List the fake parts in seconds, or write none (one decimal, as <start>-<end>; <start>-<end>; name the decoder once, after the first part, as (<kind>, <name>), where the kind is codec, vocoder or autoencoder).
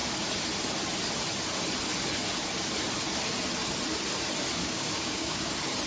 4.6-5.5 (codec, DAC)